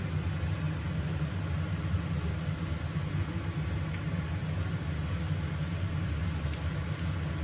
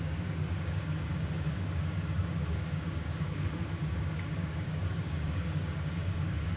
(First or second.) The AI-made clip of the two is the second